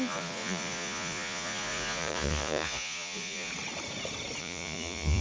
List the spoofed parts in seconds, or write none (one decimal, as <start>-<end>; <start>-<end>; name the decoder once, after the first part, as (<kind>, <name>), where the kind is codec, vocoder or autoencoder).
0.0-3.5 (vocoder, Vocos); 4.4-5.2